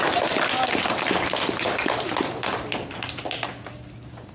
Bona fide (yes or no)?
yes